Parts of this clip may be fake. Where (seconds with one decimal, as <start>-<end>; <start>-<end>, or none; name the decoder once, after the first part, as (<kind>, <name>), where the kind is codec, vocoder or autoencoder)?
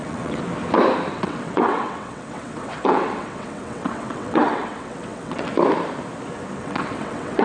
0.0-0.4 (vocoder, WaveNeXt); 1.1-5.5; 6.6-7.4